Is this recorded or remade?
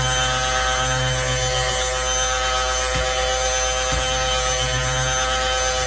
recorded